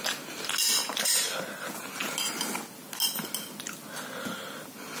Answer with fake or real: real